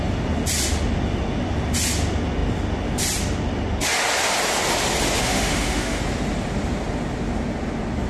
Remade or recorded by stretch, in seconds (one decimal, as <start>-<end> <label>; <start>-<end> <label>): 0.0-5.2 recorded; 5.2-6.0 remade; 6.0-8.1 recorded